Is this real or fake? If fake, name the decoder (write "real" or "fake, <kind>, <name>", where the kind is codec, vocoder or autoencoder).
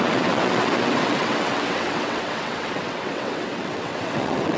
fake, vocoder, WaveNeXt